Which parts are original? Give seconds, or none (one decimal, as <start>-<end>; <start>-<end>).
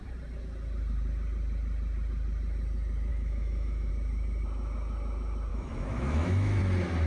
0.0-3.1; 3.9-5.5; 6.6-7.1